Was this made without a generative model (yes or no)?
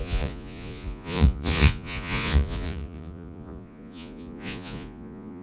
no